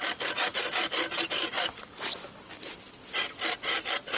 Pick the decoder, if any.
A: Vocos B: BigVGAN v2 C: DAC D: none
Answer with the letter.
B